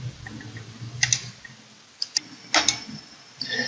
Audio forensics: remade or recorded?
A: recorded